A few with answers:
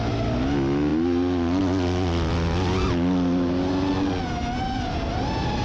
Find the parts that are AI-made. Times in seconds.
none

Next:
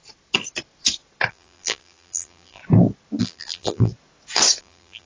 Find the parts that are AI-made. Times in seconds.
1.3-2.6 (vocoder, BigVGAN v2); 3.2-3.9; 4.6-5.1